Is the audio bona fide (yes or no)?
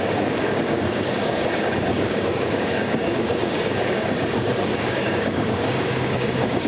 no